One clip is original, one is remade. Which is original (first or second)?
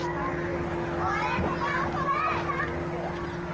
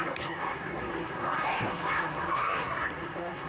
first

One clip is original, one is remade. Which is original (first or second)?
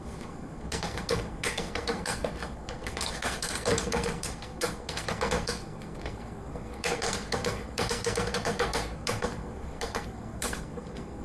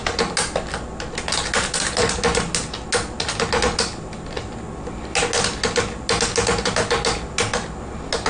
second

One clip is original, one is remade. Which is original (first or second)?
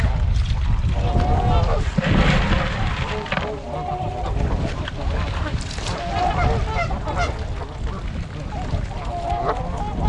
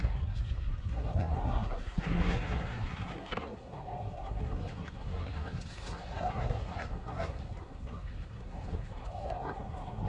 first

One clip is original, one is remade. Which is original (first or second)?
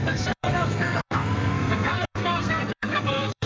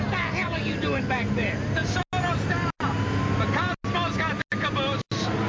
second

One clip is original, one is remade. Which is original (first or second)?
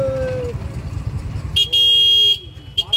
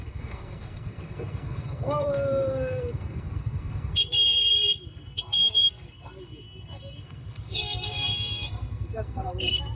first